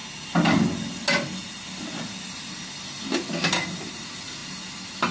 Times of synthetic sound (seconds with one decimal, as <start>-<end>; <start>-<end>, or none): none